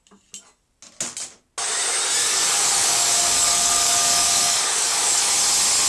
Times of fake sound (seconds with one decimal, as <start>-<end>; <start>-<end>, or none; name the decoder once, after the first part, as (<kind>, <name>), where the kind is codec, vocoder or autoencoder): 2.2-5.3 (codec, DAC)